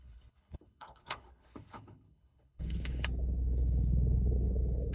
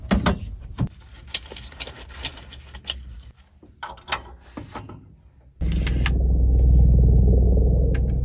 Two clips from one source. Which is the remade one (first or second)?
first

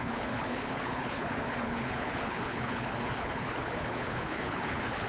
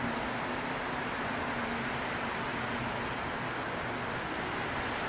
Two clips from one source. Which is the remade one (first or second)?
first